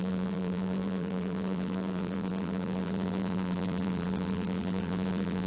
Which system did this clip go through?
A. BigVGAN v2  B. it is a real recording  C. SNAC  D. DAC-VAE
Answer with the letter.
A